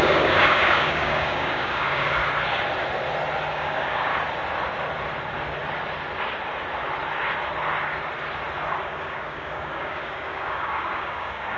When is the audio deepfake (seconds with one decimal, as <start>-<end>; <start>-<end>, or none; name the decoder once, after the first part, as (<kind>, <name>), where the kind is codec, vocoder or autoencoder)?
0.0-2.2 (codec, DAC); 3.5-4.1; 8.7-11.6